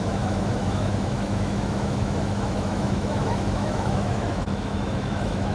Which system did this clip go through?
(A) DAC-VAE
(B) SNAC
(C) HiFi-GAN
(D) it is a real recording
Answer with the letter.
A